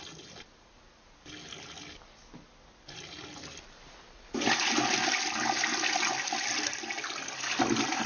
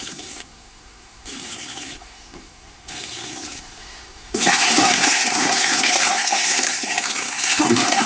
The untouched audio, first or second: first